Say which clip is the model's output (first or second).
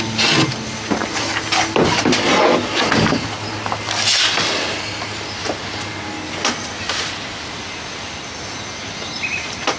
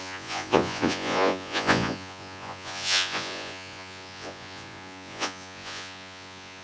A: second